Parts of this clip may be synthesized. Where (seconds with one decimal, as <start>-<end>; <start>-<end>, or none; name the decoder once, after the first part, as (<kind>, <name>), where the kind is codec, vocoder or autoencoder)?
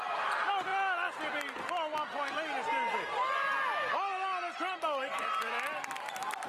none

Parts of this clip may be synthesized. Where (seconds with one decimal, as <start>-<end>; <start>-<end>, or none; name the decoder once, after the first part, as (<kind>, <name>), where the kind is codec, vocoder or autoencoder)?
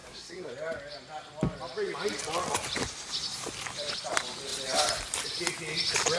0.0-0.5 (codec, SNAC)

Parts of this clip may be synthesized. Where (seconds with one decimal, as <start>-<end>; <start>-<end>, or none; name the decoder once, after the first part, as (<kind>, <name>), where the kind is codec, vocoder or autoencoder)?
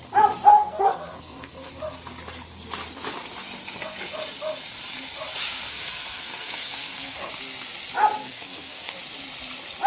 0.5-1.7 (codec, SNAC); 5.7-7.3; 8.2-8.9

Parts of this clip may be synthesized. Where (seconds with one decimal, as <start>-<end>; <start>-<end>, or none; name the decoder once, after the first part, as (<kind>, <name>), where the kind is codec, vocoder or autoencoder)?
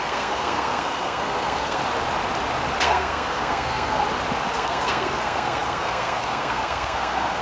0.0-1.8 (codec, SNAC); 2.8-4.0; 4.5-7.4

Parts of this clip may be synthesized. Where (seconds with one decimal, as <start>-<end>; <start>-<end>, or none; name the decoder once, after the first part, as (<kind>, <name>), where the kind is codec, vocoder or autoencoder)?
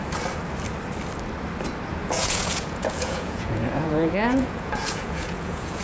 1.9-5.8 (vocoder, Vocos)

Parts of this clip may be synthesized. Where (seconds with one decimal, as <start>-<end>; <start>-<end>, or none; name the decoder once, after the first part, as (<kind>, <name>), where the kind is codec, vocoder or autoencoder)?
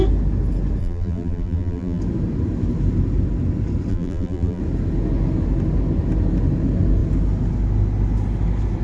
0.8-2.0 (vocoder, BigVGAN v2); 3.9-4.6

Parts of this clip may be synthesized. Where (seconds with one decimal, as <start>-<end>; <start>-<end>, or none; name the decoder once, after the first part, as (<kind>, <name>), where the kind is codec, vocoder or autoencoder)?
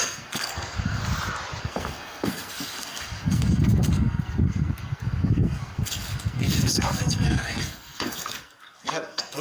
0.0-1.0 (codec, SNAC); 1.6-9.4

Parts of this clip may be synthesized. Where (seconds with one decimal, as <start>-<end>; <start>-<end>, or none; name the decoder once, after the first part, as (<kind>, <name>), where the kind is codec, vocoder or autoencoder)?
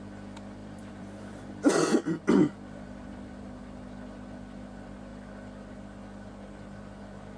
0.6-1.4 (vocoder, BigVGAN v2)